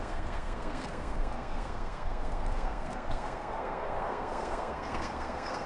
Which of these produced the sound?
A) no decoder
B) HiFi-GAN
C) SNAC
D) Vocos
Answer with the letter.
C